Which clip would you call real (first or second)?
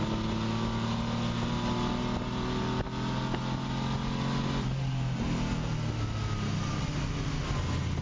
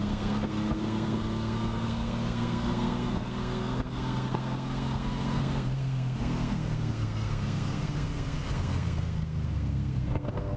first